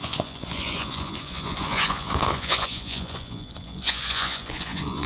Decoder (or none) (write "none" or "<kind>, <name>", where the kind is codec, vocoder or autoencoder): vocoder, Vocos